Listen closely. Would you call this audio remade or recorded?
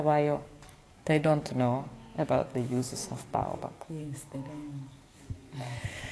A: remade